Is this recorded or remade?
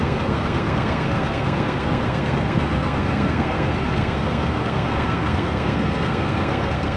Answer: remade